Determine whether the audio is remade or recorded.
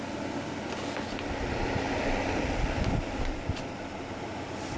recorded